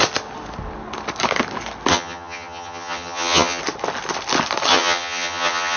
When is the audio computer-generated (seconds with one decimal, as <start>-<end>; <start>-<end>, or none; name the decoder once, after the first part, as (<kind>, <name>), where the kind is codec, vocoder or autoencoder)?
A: 1.9-3.6 (vocoder, HiFi-GAN); 4.7-5.8

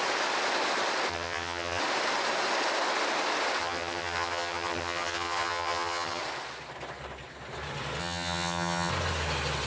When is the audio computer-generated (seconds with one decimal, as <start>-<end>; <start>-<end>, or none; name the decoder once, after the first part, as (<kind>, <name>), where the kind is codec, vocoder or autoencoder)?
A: 1.1-1.8 (vocoder, HiFi-GAN); 3.6-6.2; 8.0-8.9

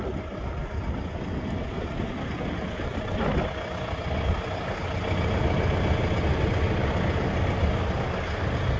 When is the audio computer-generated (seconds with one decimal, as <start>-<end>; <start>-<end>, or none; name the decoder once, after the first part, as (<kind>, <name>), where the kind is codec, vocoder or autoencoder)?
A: none

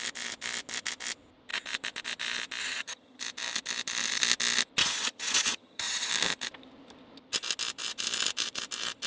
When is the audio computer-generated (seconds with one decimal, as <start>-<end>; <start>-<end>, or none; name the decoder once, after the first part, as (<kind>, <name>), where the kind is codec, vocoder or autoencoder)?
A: 2.6-3.2 (vocoder, HiFi-GAN); 4.8-6.1